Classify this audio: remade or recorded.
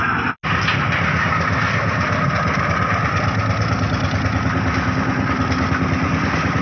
recorded